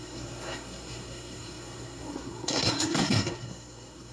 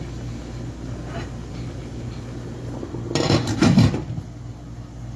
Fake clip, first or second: first